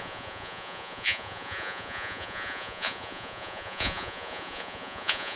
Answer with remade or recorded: remade